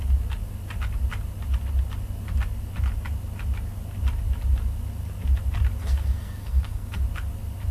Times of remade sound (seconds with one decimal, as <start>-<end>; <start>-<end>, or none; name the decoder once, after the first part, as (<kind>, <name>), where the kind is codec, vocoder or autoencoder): 5.8-7.0 (codec, SNAC)